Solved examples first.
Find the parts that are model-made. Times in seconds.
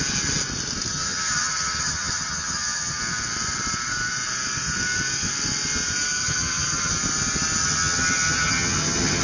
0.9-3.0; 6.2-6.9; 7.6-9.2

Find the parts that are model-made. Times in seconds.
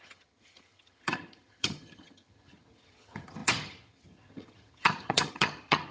0.0-5.9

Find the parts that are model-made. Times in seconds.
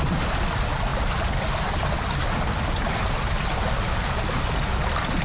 none